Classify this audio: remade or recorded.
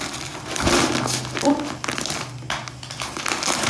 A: recorded